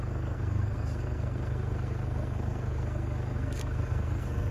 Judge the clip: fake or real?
fake